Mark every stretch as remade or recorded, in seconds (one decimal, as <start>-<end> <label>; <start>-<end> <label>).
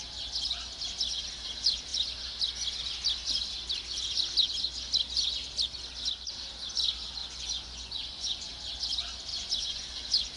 0.0-7.2 recorded; 7.2-8.5 remade; 8.5-9.3 recorded; 9.3-10.0 remade; 10.0-10.4 recorded